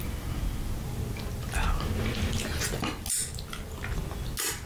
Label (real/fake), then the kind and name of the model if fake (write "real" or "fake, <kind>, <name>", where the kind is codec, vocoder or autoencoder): real